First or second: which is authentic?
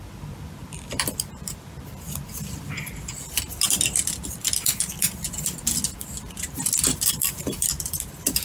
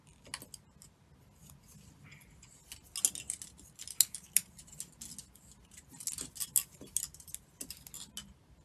second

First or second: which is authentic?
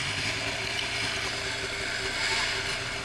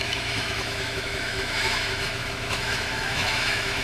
first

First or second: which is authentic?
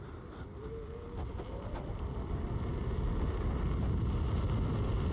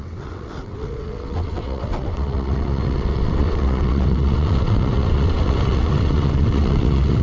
first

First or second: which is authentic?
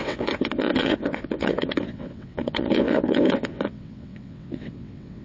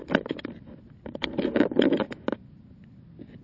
second